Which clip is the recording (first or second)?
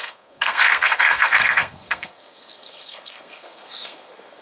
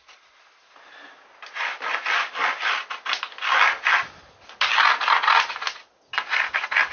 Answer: second